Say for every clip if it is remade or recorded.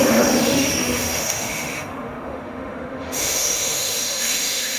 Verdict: remade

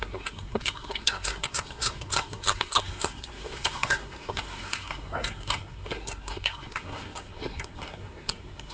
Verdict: remade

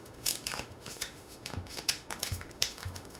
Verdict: remade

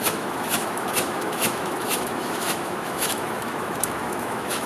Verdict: remade